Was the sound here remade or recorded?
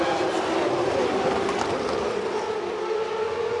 recorded